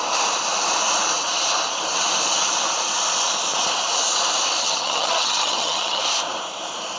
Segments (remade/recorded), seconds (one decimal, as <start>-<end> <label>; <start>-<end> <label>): 0.0-4.6 recorded; 4.6-6.0 remade; 6.0-7.0 recorded